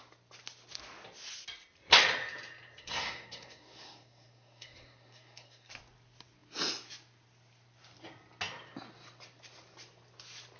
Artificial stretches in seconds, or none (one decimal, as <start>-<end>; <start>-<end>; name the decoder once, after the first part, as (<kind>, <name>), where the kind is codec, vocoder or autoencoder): 2.8-5.7 (codec, SNAC)